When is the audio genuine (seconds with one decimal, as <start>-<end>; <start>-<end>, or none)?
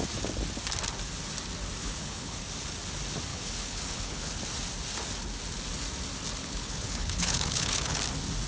0.0-1.8; 2.4-3.3; 4.4-6.4; 8.0-8.5